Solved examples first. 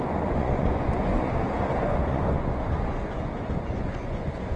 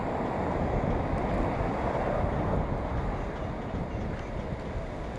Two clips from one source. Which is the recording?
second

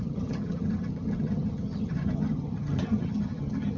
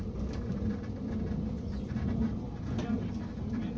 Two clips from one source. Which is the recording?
second